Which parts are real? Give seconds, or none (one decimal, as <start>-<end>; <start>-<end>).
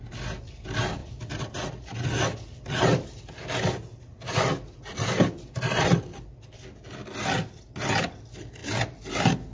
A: 0.0-9.5